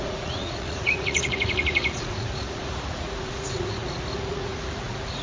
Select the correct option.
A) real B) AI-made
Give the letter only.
B